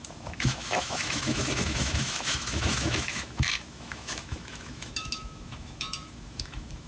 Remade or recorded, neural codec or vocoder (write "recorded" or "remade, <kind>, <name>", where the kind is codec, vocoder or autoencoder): remade, autoencoder, DAC-VAE